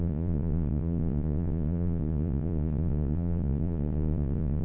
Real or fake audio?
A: fake